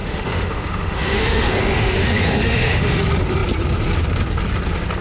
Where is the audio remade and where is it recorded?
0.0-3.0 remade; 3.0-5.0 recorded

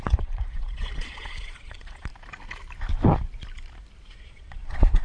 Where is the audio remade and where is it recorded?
0.0-2.1 remade; 2.1-4.1 recorded; 4.1-5.0 remade

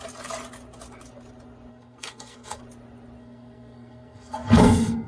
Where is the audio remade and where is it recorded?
0.0-1.7 recorded; 1.7-2.6 remade; 2.6-3.2 recorded; 3.2-5.1 remade

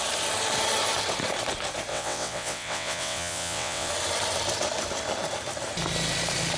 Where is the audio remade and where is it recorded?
0.0-1.9 recorded; 1.9-3.9 remade; 3.9-6.6 recorded

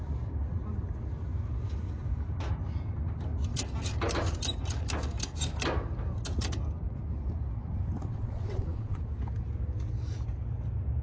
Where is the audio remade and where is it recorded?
0.0-8.1 recorded; 8.1-9.0 remade; 9.0-11.0 recorded

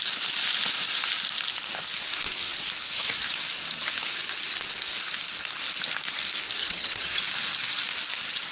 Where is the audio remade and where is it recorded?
0.0-6.6 recorded; 6.6-7.2 remade; 7.2-8.5 recorded

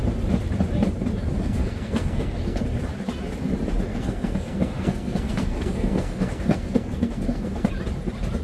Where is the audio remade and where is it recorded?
0.0-1.4 recorded; 1.4-2.6 remade; 2.6-3.9 recorded; 3.9-7.7 remade; 7.7-8.4 recorded